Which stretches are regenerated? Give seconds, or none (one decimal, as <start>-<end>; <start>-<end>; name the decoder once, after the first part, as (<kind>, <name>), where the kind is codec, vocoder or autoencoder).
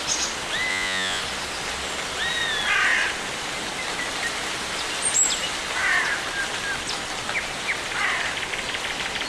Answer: 0.7-1.2 (vocoder, Vocos)